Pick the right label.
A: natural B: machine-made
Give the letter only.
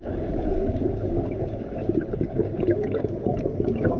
B